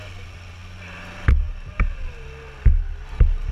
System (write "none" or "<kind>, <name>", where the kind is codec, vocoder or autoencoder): none